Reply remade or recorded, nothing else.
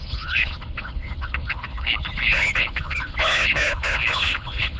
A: remade